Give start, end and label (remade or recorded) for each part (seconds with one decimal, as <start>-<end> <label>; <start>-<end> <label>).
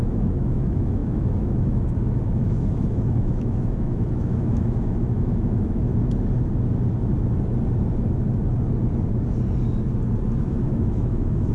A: 0.0-5.9 remade; 5.9-10.4 recorded; 10.4-11.5 remade